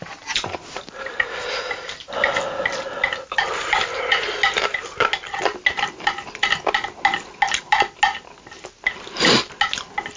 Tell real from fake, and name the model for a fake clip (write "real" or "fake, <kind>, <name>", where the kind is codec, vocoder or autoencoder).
real